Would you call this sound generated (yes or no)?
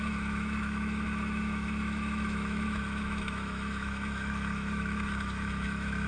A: yes